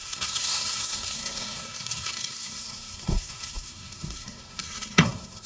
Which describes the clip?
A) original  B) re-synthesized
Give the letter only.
B